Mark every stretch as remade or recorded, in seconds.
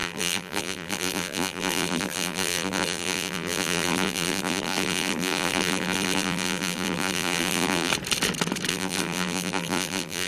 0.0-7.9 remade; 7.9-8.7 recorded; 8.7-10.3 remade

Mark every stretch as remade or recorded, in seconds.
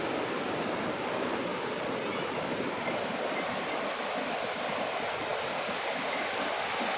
0.0-1.5 recorded; 1.5-4.8 remade; 4.8-7.0 recorded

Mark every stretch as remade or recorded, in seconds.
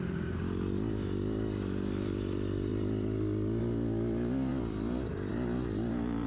0.0-4.5 recorded; 4.5-5.3 remade; 5.3-6.3 recorded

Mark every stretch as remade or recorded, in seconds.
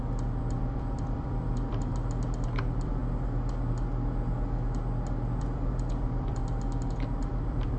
0.0-1.9 remade; 1.9-2.6 recorded; 2.6-3.0 remade; 3.0-5.4 recorded; 5.4-6.4 remade; 6.4-7.2 recorded; 7.2-7.8 remade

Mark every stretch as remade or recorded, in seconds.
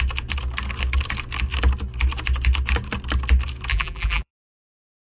0.0-3.7 recorded; 3.7-4.3 remade; 4.3-5.2 recorded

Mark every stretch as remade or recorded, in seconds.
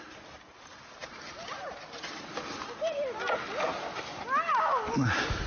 0.0-5.5 recorded